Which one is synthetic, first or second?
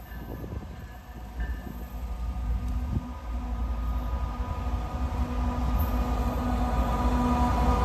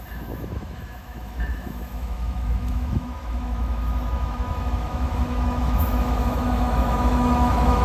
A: second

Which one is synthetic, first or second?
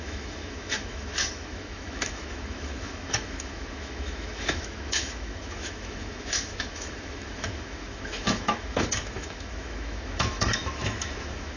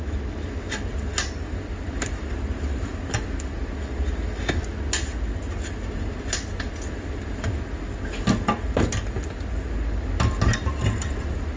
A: first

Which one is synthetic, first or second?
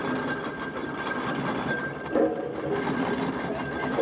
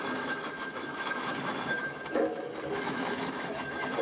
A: second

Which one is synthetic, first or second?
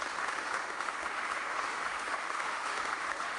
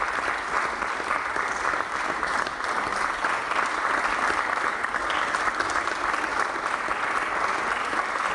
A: first